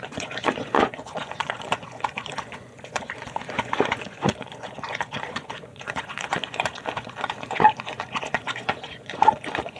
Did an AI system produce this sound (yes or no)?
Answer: yes